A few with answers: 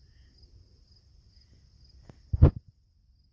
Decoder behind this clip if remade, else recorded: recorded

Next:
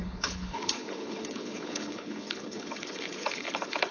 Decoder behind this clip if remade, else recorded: remade, codec, HILCodec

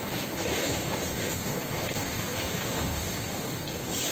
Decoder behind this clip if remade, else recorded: remade, codec, DAC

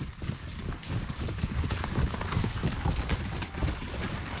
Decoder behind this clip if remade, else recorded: remade, codec, DAC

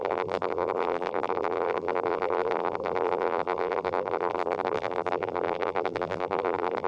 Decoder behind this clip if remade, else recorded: remade, vocoder, BigVGAN v2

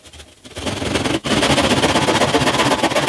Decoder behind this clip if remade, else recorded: recorded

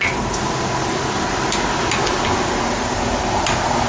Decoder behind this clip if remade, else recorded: recorded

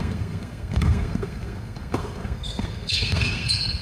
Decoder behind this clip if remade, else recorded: remade, codec, SNAC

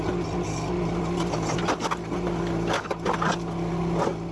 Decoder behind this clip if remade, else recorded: recorded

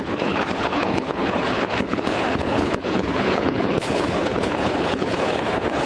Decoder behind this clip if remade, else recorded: remade, codec, HILCodec